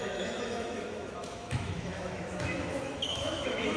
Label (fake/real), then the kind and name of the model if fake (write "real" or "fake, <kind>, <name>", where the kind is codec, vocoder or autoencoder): fake, autoencoder, DAC-VAE